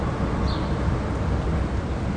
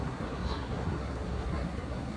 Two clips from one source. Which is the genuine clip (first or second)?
first